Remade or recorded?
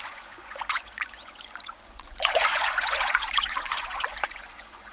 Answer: remade